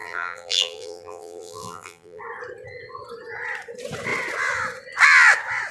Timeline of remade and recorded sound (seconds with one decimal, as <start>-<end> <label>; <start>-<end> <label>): 0.0-2.2 remade; 2.2-5.7 recorded

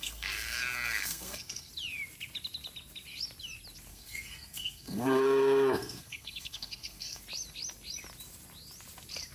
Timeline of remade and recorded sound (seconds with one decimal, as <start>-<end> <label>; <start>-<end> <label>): 0.0-1.7 remade; 1.7-3.9 recorded; 3.9-7.2 remade; 7.2-9.3 recorded

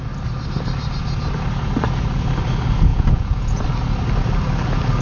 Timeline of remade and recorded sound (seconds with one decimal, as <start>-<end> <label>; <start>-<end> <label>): 0.0-2.9 recorded; 2.9-3.6 remade; 3.6-5.0 recorded

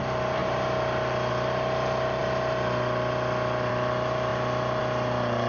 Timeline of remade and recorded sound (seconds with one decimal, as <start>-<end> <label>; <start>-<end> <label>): 0.0-5.5 recorded

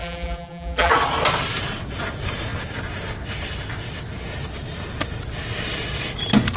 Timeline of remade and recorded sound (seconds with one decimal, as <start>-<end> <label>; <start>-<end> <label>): 0.0-0.9 remade; 0.9-6.6 recorded